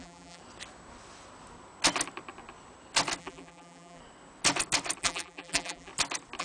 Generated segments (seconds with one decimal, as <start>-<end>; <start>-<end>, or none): 0.0-0.4; 3.2-4.0; 5.0-5.9